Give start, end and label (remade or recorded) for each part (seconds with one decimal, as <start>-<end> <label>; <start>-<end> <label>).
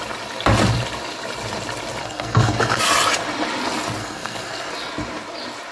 0.0-2.0 recorded; 2.0-2.8 remade; 2.8-4.0 recorded; 4.0-4.7 remade; 4.7-5.7 recorded